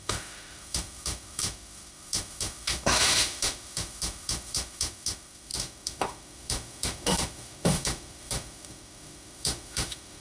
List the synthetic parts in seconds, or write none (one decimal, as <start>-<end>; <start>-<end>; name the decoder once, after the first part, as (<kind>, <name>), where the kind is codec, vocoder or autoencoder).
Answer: 0.0-10.2 (autoencoder, DAC-VAE)